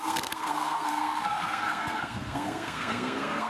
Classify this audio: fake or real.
fake